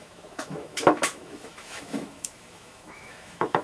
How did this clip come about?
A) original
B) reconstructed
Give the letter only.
B